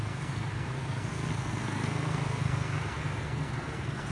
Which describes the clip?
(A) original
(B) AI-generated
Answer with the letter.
B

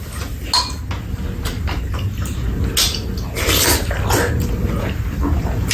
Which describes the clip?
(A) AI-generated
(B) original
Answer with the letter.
B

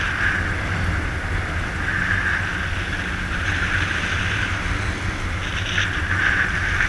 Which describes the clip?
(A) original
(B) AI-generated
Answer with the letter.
A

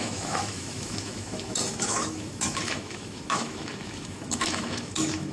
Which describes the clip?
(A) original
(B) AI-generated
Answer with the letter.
B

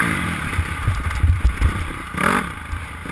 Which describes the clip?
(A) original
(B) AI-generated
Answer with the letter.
B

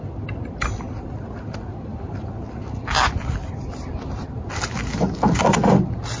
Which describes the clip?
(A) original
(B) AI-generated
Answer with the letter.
A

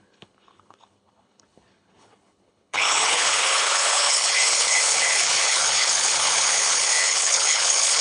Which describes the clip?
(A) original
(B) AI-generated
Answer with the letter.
B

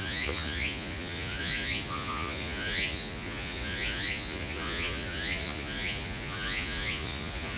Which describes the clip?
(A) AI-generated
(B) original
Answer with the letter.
A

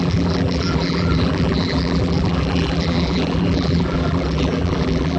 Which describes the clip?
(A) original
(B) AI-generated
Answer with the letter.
B